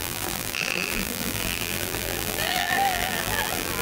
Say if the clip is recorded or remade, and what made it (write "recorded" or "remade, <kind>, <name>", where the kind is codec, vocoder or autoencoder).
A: remade, vocoder, BigVGAN v2